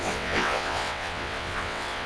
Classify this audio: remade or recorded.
remade